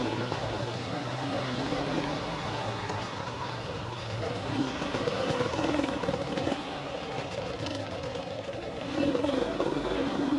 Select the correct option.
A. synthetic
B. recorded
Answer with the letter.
A